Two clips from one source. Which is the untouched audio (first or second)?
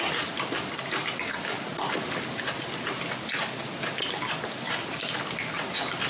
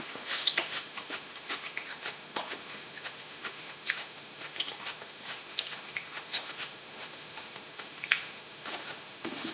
first